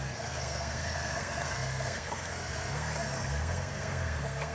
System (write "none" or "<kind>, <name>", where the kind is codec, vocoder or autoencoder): codec, SNAC